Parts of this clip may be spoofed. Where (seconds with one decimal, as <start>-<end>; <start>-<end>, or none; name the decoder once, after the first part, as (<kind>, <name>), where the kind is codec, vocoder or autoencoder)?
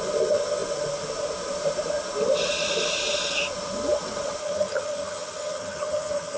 4.4-6.4 (vocoder, HiFi-GAN)